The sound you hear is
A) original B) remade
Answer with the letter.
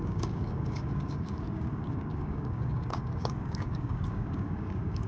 B